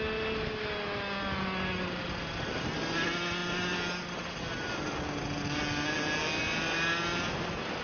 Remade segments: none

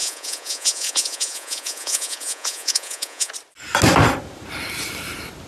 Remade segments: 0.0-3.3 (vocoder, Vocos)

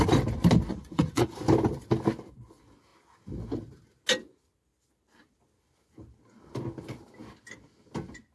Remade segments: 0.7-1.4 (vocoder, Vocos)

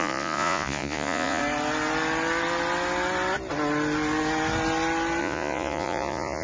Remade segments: 0.0-1.4 (vocoder, Vocos); 5.2-6.4